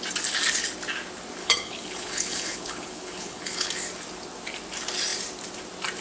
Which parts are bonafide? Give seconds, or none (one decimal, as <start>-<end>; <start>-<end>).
0.0-1.4; 3.7-6.0